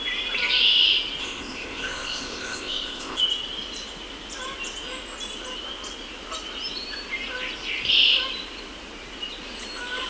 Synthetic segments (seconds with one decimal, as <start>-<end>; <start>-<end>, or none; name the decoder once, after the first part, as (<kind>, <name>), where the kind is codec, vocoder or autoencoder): 1.2-3.2 (codec, ZipCodec)